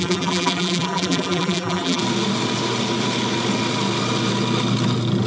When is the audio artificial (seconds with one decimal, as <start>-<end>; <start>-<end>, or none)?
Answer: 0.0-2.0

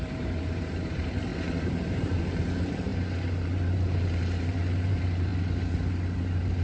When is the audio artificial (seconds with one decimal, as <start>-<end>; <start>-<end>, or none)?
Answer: 0.0-1.3; 1.9-5.3

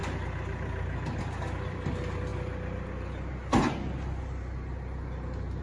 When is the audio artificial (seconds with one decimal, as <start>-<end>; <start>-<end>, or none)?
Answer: none

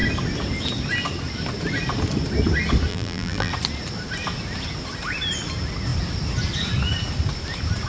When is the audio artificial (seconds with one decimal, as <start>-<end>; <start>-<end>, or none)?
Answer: 2.9-3.5